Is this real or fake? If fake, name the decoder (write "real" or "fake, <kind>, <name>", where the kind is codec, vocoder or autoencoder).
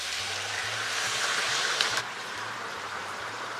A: fake, vocoder, BigVGAN v2